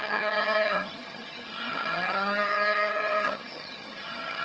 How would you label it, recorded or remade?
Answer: remade